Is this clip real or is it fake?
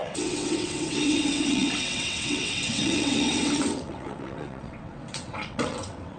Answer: fake